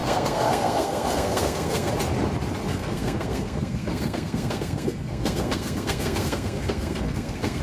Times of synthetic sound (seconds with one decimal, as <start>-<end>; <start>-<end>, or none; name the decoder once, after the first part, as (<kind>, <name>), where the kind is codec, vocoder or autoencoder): 0.0-1.9 (codec, SNAC); 2.7-7.6